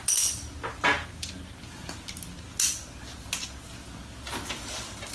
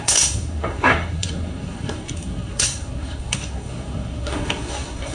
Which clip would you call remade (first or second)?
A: second